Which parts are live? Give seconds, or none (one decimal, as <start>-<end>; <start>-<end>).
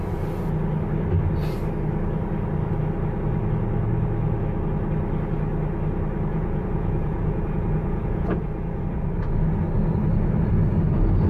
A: 0.0-6.3; 8.8-11.3